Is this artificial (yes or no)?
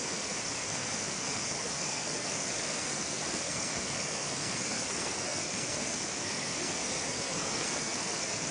yes